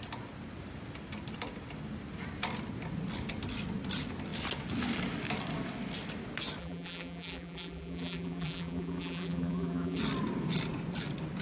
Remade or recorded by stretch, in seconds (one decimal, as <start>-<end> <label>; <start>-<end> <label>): 0.0-6.6 recorded; 6.6-10.0 remade; 10.0-11.4 recorded